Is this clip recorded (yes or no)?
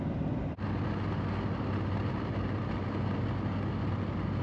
yes